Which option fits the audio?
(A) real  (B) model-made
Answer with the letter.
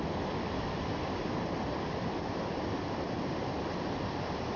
B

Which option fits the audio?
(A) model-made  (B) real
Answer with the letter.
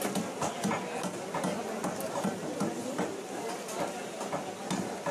B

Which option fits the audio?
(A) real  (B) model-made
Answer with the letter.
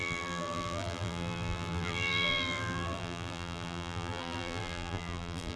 B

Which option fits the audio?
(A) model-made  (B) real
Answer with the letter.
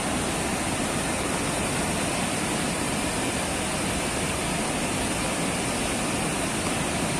B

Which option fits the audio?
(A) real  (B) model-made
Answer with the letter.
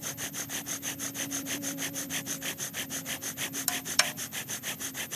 B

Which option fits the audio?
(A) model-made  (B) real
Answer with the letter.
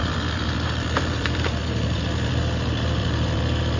A